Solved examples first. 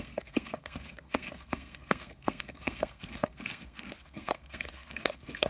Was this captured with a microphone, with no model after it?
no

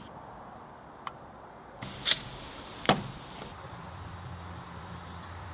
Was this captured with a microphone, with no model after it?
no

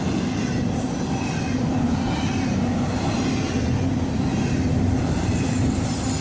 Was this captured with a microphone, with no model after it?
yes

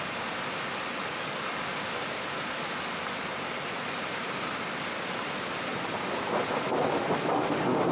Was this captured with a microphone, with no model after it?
yes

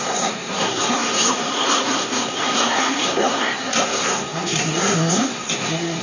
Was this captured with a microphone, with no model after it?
no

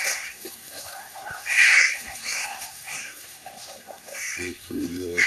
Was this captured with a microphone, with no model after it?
no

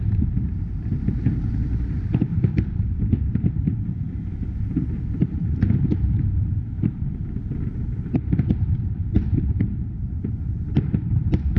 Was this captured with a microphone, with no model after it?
no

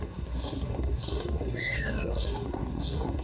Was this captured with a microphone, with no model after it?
no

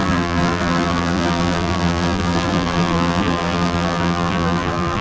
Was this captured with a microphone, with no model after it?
no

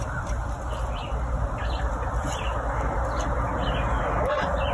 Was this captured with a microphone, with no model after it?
yes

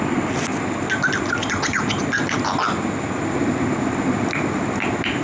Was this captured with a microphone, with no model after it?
yes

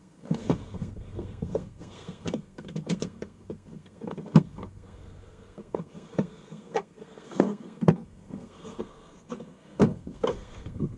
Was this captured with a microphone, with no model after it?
no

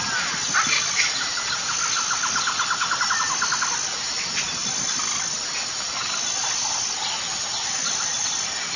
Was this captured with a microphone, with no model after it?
yes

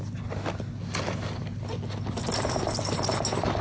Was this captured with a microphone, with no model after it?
yes